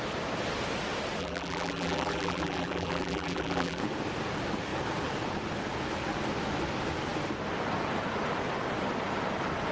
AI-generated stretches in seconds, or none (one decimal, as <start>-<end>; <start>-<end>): 1.2-3.8